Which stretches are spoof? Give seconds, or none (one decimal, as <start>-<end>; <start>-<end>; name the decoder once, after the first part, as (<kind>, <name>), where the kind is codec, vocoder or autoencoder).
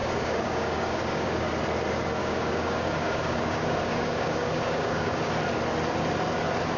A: 0.0-1.5 (codec, DAC); 2.2-5.3